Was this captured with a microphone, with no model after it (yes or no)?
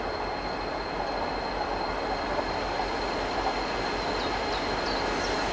yes